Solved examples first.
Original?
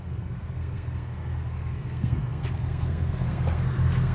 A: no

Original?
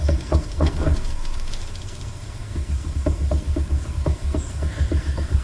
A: no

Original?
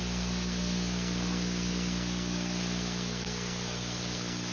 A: no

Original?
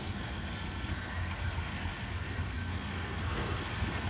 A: no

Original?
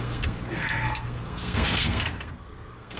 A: no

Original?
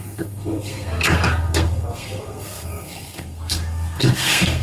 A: no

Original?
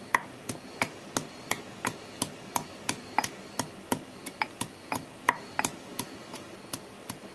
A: yes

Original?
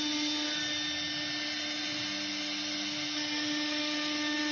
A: yes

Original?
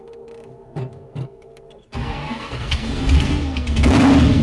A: no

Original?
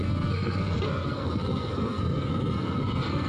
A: no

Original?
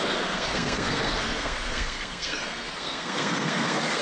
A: no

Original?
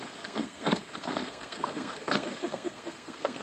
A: no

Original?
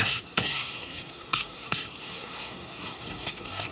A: no